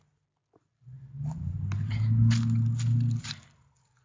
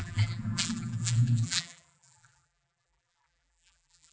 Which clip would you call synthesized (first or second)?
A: second